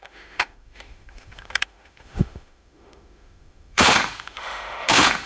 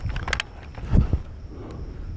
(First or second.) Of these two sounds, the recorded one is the second